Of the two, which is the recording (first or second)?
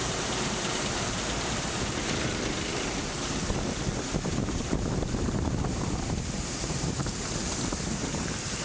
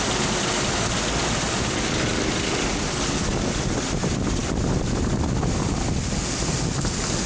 second